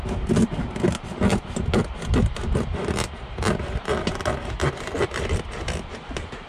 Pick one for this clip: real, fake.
real